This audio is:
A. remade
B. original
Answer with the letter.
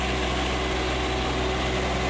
B